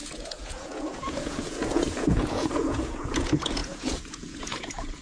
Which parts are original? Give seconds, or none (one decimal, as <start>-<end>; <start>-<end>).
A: none